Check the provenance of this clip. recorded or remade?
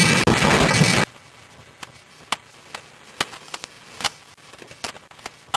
recorded